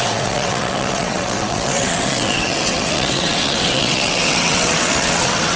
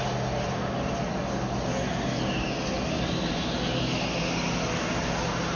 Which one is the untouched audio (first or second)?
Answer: second